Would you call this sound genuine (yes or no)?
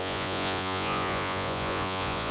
no